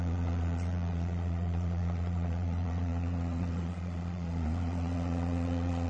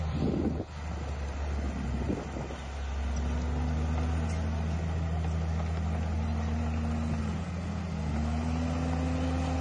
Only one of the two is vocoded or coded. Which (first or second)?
first